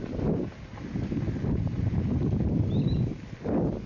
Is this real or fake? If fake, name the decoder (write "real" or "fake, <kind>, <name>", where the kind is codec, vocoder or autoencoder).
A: real